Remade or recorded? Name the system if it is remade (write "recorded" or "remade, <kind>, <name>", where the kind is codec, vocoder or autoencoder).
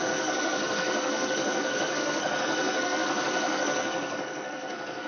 remade, codec, SNAC